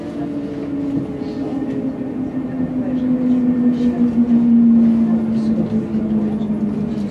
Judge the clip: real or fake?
real